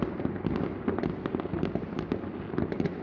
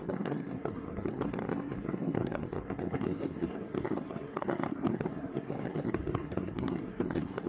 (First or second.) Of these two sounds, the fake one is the second